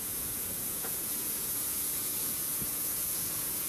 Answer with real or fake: fake